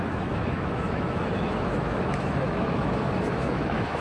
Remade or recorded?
remade